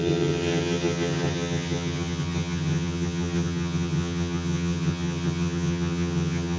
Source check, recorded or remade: remade